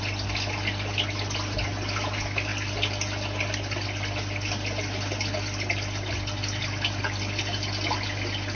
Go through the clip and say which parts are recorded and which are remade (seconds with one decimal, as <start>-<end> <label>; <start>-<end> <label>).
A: 0.0-8.5 recorded